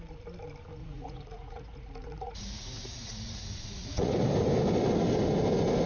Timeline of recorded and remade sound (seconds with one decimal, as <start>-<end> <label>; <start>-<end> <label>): 0.0-0.8 recorded; 0.8-4.1 remade; 4.1-5.9 recorded